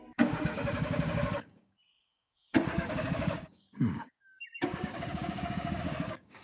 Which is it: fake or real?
fake